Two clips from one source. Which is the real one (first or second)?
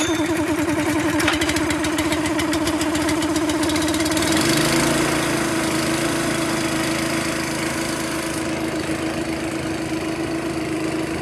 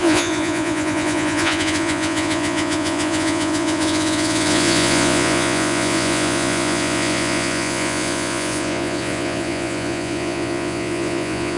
first